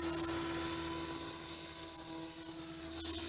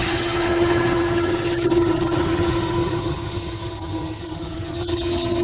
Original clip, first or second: first